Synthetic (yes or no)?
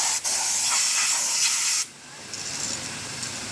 no